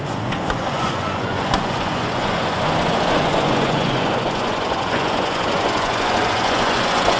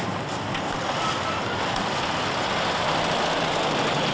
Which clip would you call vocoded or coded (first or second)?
first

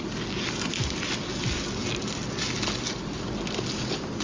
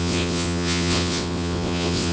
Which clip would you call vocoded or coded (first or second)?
second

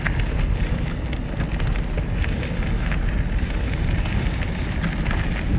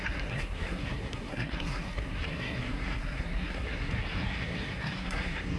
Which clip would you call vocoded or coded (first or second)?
second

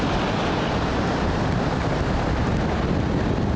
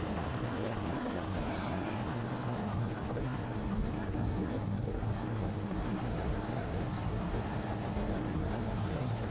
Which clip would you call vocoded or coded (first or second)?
second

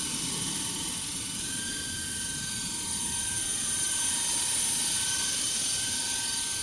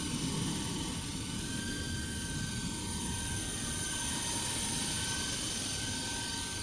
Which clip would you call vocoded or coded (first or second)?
first